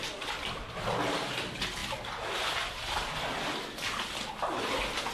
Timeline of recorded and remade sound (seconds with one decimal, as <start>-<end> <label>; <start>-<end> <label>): 0.0-5.1 recorded